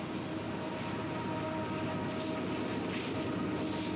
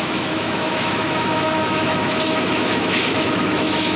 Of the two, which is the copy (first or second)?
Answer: second